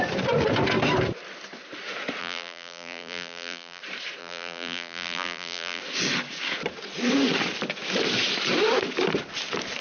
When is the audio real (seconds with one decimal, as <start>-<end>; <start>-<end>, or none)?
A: 0.0-2.2; 3.8-4.2; 5.8-9.8